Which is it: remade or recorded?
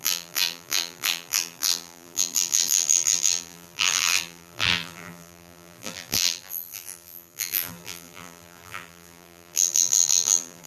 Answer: remade